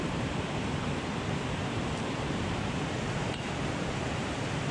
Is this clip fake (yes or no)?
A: yes